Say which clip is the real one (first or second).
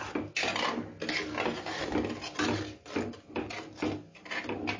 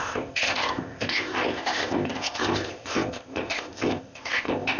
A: first